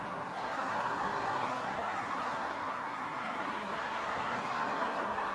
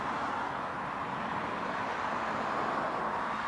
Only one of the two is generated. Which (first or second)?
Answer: first